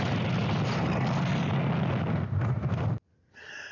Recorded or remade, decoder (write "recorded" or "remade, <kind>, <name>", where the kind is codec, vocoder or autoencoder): recorded